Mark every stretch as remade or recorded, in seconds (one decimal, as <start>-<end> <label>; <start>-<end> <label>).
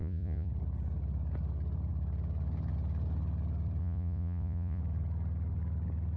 0.0-0.5 remade; 0.5-3.8 recorded; 3.8-4.8 remade; 4.8-6.2 recorded